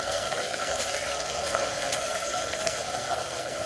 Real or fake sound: fake